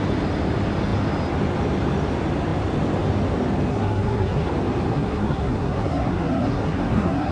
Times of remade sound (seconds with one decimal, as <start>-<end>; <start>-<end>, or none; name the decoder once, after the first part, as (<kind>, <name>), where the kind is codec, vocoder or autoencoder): 3.7-4.5 (codec, SNAC); 4.9-7.3